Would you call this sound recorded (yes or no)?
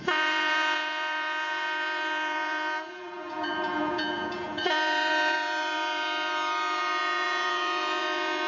no